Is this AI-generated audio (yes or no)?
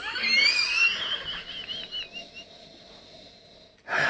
no